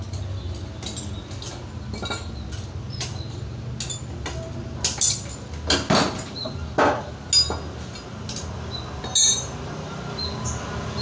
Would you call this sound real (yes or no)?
yes